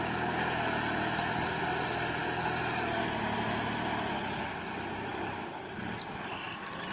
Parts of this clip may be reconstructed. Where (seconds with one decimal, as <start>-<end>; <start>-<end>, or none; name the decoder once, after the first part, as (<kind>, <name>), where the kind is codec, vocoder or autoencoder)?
2.2-3.0 (vocoder, BigVGAN v2); 5.1-5.9